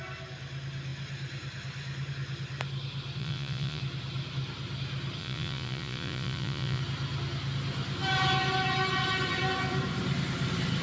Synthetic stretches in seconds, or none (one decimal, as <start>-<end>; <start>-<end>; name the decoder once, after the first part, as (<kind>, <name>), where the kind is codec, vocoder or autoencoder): 3.2-3.8 (vocoder, Vocos); 5.2-6.8